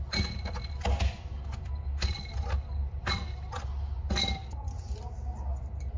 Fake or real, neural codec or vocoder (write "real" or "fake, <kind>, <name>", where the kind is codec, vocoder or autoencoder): real